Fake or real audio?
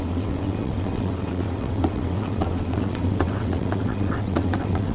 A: fake